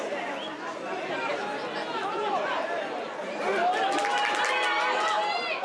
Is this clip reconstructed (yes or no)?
no